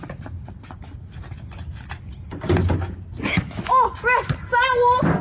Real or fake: real